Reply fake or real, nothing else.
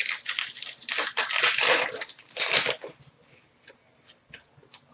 real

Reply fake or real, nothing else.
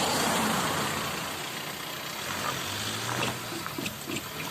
real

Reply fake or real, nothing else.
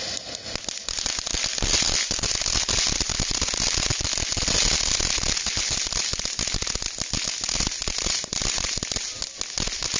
real